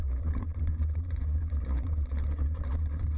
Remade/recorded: remade